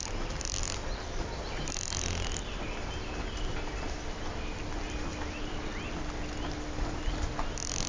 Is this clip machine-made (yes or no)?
no